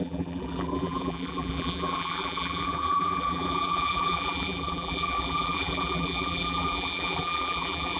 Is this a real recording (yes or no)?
no